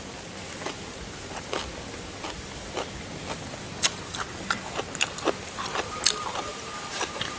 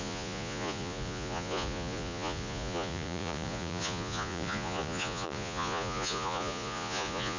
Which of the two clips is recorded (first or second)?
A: first